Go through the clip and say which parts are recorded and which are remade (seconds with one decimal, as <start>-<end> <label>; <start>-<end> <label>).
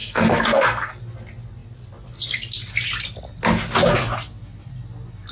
0.0-1.0 remade; 1.0-5.3 recorded